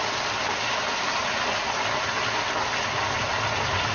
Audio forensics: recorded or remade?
recorded